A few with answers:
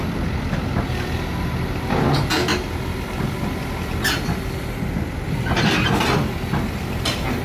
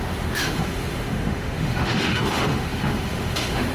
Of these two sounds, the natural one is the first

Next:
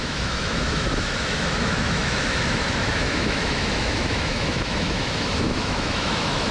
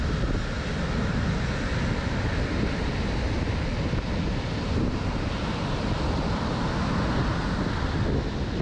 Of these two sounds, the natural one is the second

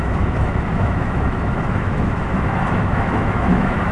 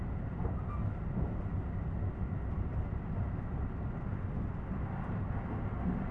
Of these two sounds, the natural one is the second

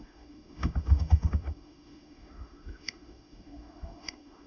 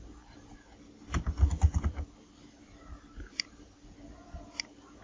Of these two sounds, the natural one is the second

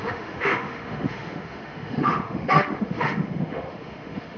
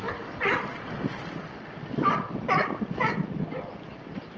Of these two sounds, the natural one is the second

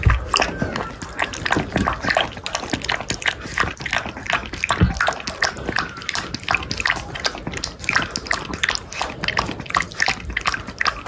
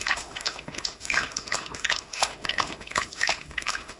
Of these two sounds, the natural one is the first